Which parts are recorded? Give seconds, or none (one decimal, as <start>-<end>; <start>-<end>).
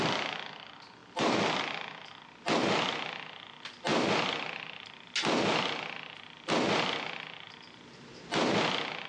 0.0-1.0; 1.6-9.1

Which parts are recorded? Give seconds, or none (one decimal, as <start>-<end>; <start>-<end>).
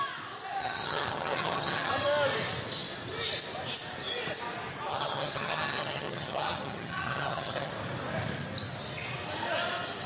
0.0-0.6; 1.9-4.9; 7.7-10.1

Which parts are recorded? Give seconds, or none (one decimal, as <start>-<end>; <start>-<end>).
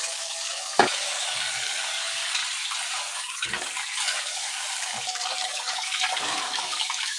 2.4-2.9